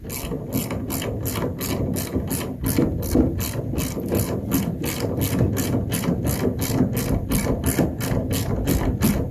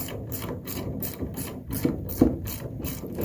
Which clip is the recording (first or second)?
first